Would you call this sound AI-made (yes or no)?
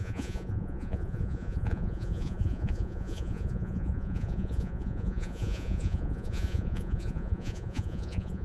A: yes